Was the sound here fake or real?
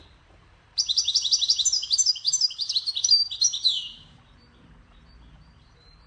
fake